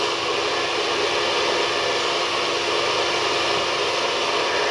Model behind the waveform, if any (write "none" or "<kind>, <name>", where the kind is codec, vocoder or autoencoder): none